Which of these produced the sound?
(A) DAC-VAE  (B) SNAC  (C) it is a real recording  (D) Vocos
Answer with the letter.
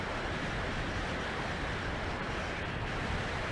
C